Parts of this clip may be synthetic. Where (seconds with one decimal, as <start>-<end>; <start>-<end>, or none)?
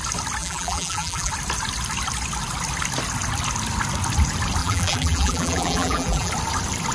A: 0.4-1.3; 4.6-6.3